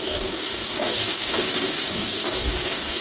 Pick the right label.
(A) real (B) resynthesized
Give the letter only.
B